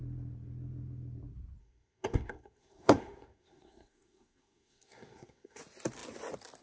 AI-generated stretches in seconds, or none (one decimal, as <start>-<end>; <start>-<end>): 1.6-5.6